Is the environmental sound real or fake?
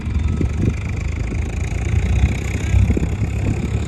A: real